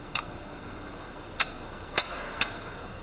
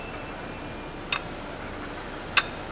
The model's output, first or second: first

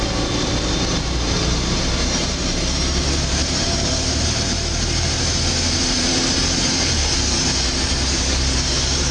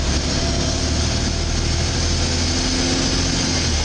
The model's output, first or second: first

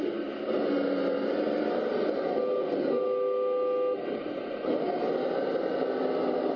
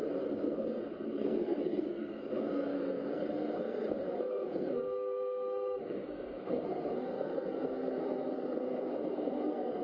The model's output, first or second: second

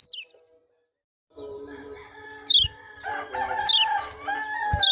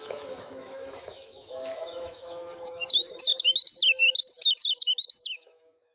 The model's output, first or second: second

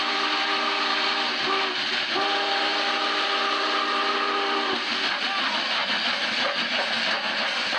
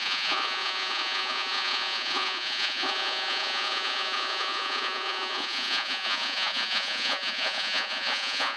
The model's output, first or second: second